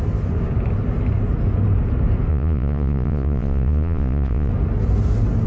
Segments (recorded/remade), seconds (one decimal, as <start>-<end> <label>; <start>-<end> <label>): 0.0-2.3 recorded; 2.3-4.5 remade; 4.5-5.5 recorded

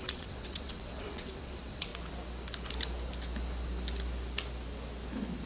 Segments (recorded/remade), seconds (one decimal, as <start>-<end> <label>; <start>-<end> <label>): 0.0-1.9 remade; 1.9-5.5 recorded

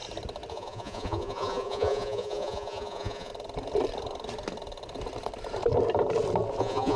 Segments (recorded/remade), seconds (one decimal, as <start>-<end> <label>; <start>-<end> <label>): 0.0-0.5 recorded; 0.5-3.3 remade; 3.3-6.6 recorded; 6.6-7.0 remade

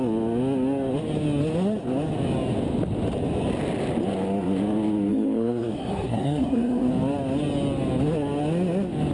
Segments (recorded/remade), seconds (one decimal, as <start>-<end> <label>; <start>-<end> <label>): 0.0-5.1 recorded; 5.1-6.9 remade; 6.9-9.1 recorded

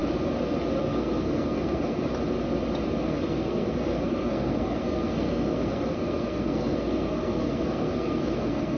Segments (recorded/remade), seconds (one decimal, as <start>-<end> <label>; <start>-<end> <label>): 0.0-0.8 recorded; 0.8-2.1 remade; 2.1-3.0 recorded; 3.0-8.8 remade

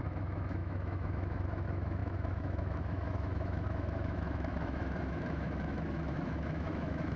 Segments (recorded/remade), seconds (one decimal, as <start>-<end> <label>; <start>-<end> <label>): 0.0-7.2 remade

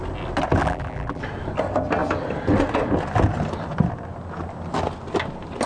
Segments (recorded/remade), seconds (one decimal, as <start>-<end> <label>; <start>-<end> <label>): 0.0-0.6 recorded; 0.6-1.2 remade; 1.2-5.7 recorded